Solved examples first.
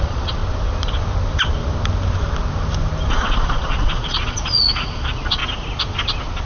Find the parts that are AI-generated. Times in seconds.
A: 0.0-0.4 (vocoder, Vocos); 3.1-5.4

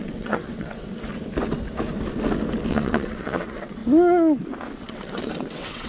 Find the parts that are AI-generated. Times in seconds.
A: 0.0-1.1 (vocoder, WaveNeXt); 2.7-3.8; 4.7-5.9

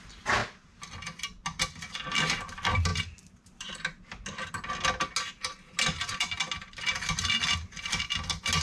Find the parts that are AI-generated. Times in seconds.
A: none